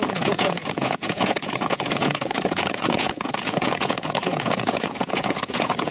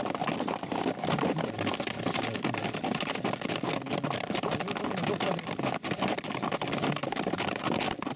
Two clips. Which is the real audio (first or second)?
second